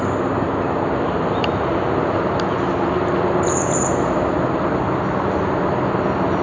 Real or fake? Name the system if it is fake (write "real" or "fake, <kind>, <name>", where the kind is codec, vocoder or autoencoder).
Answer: real